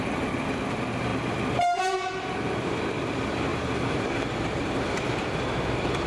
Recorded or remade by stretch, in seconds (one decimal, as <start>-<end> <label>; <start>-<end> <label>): 0.0-1.1 recorded; 1.1-1.8 remade; 1.8-3.5 recorded; 3.5-5.1 remade; 5.1-6.1 recorded